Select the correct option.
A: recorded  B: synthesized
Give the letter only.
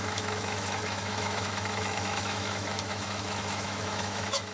B